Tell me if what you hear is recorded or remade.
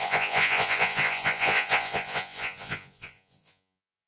remade